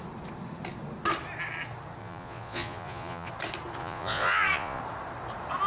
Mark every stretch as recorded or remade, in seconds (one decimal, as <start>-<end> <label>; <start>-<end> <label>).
0.0-2.0 recorded; 2.0-3.3 remade; 3.3-3.8 recorded; 3.8-4.8 remade; 4.8-5.7 recorded